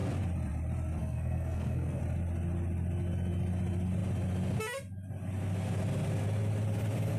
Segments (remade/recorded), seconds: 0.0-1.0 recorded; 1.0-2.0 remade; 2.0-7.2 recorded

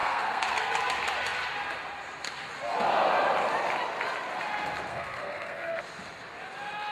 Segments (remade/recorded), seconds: 0.0-0.8 remade; 0.8-4.9 recorded; 4.9-5.8 remade; 5.8-6.9 recorded

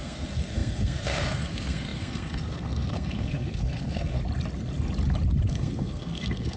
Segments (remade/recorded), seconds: 0.0-4.2 remade; 4.2-5.5 recorded; 5.5-6.6 remade

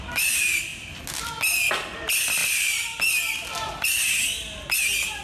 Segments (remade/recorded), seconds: 0.0-5.2 recorded

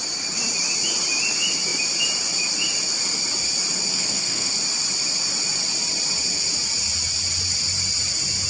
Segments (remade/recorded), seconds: 0.0-3.9 recorded; 3.9-4.5 remade; 4.5-8.5 recorded

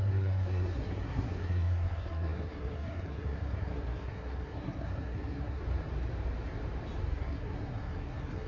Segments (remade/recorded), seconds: 0.0-5.6 remade; 5.6-7.1 recorded; 7.1-8.5 remade

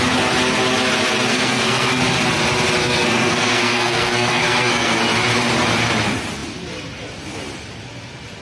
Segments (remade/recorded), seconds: 0.0-1.3 recorded; 1.3-2.0 remade; 2.0-2.8 recorded; 2.8-5.0 remade; 5.0-8.4 recorded

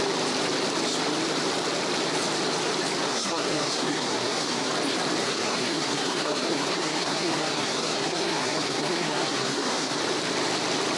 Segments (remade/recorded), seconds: 0.0-3.1 recorded; 3.1-4.7 remade; 4.7-5.2 recorded; 5.2-10.0 remade; 10.0-11.0 recorded